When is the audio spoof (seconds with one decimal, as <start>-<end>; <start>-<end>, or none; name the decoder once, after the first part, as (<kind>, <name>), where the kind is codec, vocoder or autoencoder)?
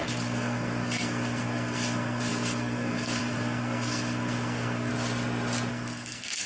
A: 0.0-4.9 (codec, SNAC); 5.7-6.5